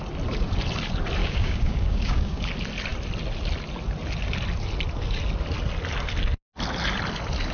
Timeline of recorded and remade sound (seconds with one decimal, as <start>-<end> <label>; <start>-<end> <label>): 0.0-1.2 recorded; 1.2-2.5 remade; 2.5-7.5 recorded